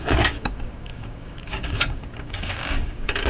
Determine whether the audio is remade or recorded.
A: remade